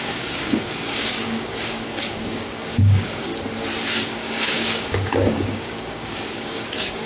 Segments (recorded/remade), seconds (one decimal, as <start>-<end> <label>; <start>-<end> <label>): 0.0-3.3 remade; 3.3-3.8 recorded; 3.8-7.1 remade